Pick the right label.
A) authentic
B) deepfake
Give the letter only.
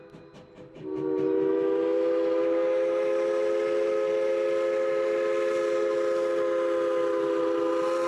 A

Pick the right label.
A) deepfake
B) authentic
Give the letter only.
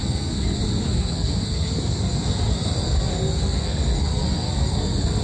A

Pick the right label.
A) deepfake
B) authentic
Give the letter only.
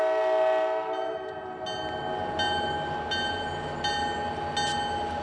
B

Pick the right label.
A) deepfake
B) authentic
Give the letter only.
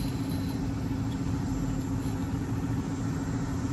B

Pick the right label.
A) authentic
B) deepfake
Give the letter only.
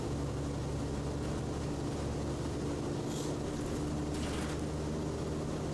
A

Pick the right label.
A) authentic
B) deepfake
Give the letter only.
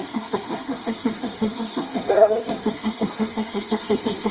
B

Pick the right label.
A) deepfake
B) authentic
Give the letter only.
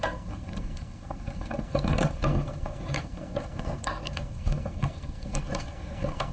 A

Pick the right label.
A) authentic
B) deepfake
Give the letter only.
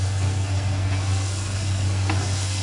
B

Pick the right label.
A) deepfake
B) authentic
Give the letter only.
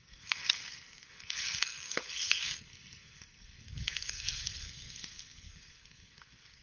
A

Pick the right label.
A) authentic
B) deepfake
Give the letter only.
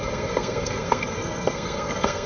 B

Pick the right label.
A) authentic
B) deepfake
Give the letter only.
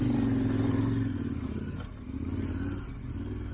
A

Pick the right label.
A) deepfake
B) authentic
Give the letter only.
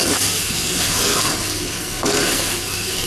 A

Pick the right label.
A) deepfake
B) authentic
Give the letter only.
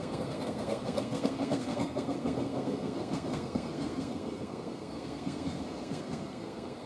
A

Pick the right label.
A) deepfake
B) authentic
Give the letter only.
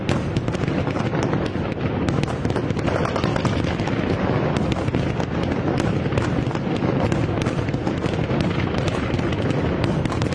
B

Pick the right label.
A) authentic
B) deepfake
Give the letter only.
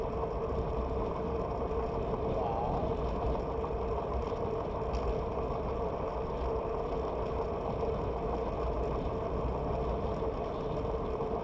A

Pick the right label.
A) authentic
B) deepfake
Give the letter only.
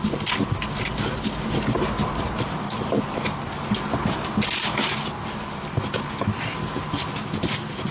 A